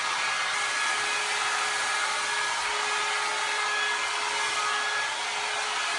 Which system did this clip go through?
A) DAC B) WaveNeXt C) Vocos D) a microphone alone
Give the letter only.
D